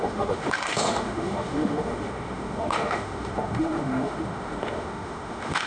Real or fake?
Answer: fake